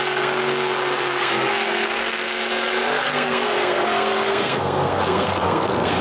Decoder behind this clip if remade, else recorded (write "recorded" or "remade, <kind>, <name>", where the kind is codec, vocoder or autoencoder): remade, codec, SNAC